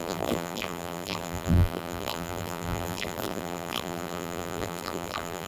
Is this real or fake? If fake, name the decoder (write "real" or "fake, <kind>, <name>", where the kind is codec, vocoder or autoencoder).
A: fake, vocoder, BigVGAN v2